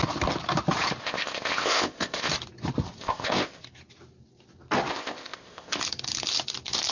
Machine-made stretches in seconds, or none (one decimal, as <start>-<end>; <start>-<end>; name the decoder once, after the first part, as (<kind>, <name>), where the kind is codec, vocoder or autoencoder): 1.0-2.3 (codec, ZipCodec); 3.0-3.6; 4.9-5.8